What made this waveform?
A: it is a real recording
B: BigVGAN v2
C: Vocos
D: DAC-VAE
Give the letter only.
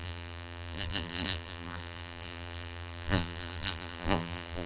B